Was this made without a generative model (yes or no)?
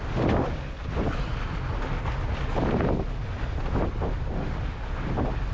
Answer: yes